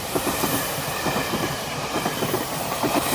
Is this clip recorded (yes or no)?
no